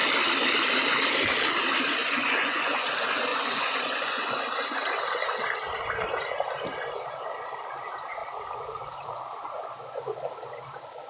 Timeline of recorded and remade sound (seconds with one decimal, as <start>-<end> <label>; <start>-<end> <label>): 0.0-2.0 recorded; 2.0-2.9 remade; 2.9-3.3 recorded; 3.3-4.4 remade; 4.4-11.1 recorded